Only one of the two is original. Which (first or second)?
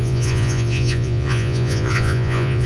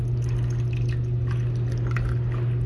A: second